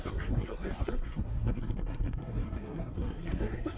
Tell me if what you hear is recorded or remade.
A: remade